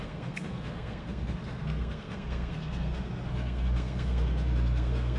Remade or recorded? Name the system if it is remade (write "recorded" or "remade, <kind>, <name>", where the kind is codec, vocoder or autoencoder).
remade, codec, SNAC